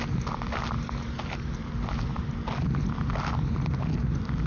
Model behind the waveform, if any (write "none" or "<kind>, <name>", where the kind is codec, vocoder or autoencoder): none